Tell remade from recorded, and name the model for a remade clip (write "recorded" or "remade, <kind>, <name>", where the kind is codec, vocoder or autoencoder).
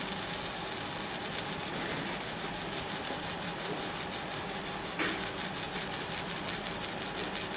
recorded